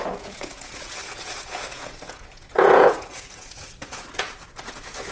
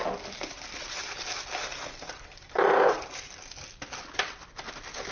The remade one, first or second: first